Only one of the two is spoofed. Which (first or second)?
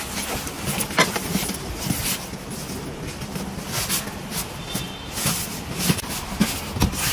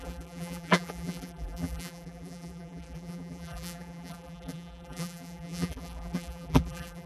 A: second